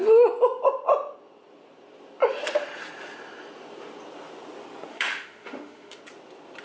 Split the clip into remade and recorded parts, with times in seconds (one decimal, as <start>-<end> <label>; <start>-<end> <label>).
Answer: 0.0-4.9 recorded; 4.9-6.0 remade; 6.0-6.6 recorded